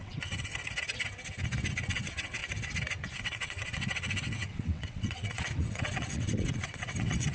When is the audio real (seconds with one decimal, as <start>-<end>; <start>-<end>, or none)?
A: 0.5-1.9; 2.4-3.2